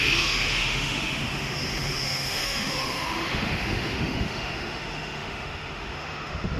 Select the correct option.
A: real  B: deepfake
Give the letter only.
B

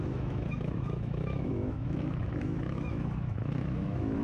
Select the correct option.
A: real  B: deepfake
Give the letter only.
B